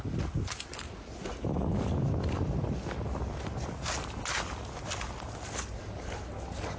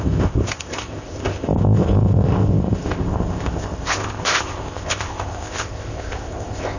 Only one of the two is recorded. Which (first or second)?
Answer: first